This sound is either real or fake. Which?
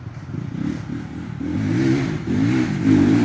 real